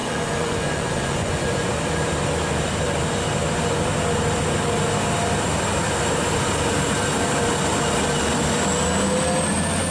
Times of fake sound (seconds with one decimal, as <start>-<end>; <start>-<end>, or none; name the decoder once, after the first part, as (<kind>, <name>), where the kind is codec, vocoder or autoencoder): 0.0-1.7 (vocoder, Vocos)